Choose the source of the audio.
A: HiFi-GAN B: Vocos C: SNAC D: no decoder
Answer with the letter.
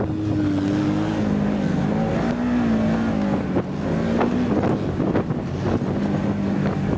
D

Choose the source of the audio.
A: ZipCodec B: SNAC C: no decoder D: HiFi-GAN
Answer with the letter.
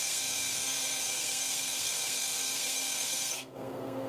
B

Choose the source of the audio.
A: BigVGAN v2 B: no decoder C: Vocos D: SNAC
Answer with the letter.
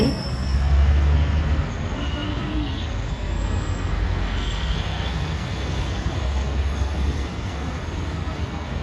D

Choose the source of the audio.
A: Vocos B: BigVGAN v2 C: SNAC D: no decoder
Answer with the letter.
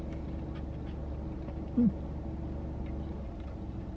D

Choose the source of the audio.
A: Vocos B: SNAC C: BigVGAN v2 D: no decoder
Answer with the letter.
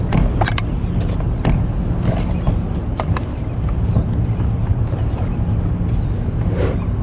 D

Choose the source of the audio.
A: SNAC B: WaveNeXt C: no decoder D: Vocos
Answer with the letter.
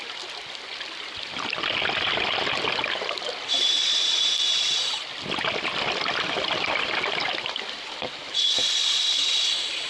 C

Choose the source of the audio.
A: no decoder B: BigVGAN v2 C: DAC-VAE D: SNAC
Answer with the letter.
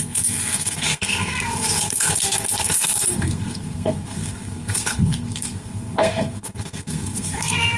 D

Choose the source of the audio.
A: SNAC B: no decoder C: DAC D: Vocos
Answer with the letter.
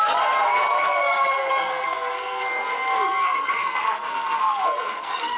A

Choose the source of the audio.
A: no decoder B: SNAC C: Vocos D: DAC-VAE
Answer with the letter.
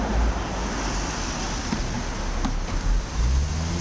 A